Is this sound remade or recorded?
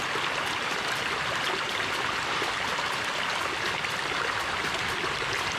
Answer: recorded